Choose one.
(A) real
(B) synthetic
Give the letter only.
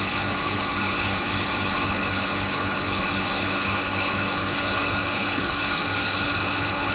B